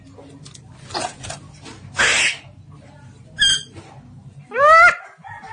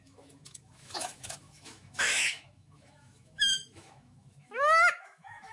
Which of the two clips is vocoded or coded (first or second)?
second